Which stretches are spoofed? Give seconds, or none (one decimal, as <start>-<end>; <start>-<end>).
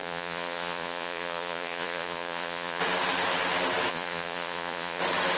0.0-2.8; 3.9-5.0